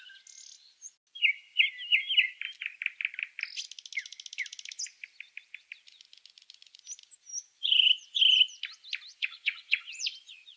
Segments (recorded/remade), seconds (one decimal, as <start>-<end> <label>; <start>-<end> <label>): 0.0-7.6 recorded; 7.6-8.2 remade; 8.2-9.1 recorded; 9.1-10.6 remade